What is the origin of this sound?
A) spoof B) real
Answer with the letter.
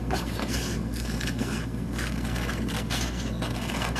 A